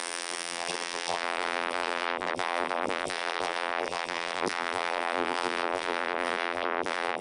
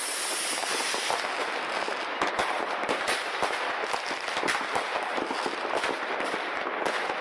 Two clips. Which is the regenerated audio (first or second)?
first